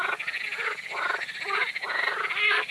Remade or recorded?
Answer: recorded